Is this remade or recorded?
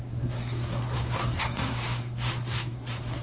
remade